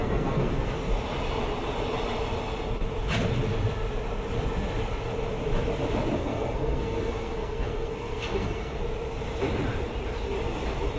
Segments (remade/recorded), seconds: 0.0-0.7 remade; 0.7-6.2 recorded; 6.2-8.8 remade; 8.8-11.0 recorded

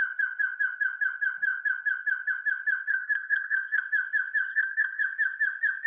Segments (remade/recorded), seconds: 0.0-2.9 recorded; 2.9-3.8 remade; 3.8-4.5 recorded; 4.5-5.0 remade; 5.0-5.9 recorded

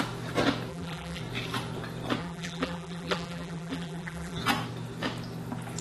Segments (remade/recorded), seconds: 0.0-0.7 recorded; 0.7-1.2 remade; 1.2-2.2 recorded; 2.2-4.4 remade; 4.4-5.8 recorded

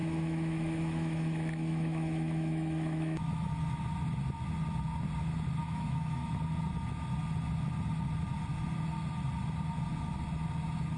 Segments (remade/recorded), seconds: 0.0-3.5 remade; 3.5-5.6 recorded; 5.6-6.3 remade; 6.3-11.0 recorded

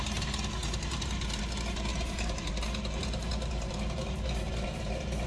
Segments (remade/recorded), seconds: 0.0-0.6 recorded; 0.6-1.4 remade; 1.4-1.9 recorded; 1.9-2.5 remade; 2.5-3.0 recorded; 3.0-5.3 remade

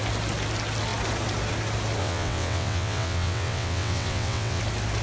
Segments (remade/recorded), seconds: 0.0-2.0 recorded; 2.0-4.6 remade; 4.6-5.0 recorded

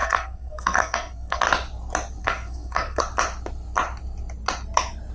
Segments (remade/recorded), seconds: 0.0-1.4 remade; 1.4-2.2 recorded; 2.2-3.0 remade; 3.0-5.1 recorded